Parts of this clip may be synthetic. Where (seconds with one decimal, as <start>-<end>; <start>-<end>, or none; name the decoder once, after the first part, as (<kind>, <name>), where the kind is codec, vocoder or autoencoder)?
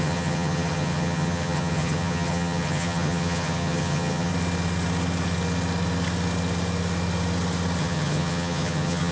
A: 0.0-4.3 (vocoder, HiFi-GAN); 7.8-9.1